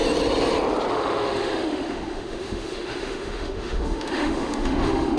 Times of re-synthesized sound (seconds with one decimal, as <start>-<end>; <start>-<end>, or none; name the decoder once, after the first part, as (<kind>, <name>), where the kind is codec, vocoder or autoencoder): 0.9-5.2 (autoencoder, DAC-VAE)